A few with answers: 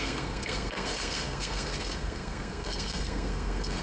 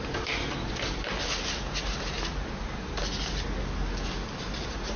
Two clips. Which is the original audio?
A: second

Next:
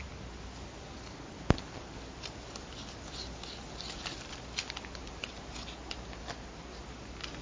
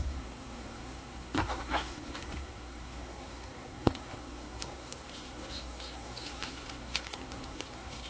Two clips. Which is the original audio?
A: first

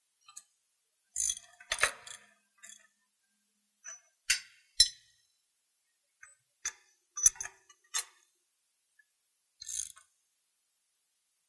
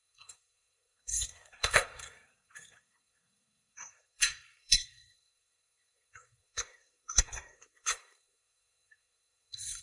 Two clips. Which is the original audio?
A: first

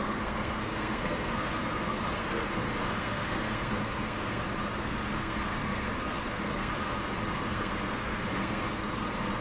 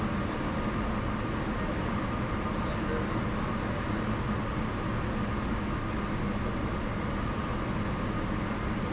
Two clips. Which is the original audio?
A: second